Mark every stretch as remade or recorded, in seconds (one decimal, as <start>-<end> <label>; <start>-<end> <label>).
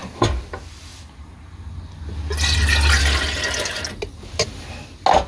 0.0-5.3 recorded